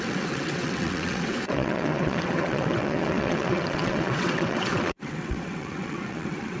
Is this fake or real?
fake